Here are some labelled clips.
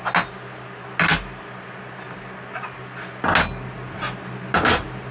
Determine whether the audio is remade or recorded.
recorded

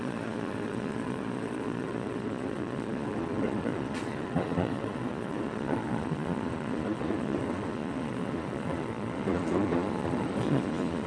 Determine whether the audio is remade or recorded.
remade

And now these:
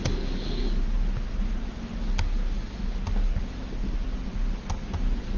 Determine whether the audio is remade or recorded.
recorded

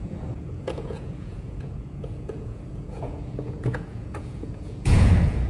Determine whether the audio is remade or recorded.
remade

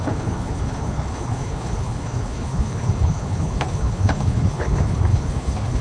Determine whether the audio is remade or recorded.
remade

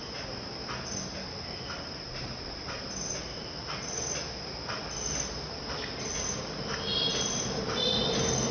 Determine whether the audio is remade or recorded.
recorded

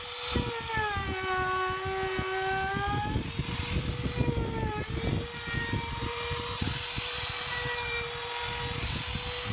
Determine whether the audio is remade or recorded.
recorded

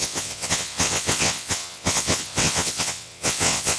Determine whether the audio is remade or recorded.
remade